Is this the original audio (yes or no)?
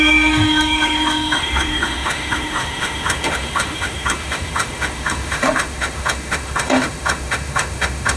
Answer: no